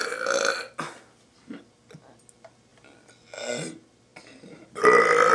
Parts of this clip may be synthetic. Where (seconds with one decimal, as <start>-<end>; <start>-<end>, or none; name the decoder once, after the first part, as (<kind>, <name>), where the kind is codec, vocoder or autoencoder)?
2.7-3.5 (vocoder, BigVGAN v2); 4.1-5.3